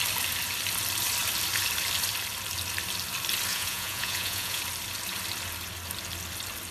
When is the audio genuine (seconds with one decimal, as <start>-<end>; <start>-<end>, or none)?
0.0-3.5; 4.6-6.7